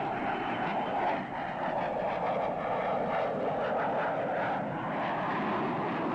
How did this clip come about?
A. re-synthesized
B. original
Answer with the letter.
B